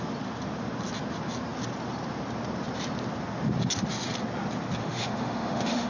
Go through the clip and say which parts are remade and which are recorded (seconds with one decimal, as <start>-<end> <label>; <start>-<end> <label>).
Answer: 0.0-4.8 recorded; 4.8-5.9 remade